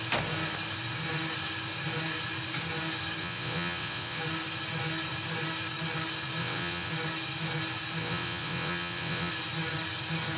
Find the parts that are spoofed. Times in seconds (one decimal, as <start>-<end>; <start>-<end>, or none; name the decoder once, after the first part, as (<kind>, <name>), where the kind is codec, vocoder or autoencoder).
3.2-4.2 (vocoder, WaveNeXt); 6.4-6.9; 8.0-9.3